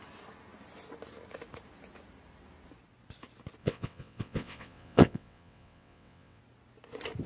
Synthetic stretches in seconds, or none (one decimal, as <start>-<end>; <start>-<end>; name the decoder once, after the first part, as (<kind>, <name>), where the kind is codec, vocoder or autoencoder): 3.6-6.4 (vocoder, WaveNeXt)